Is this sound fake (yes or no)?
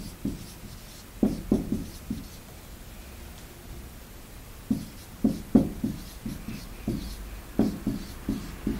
no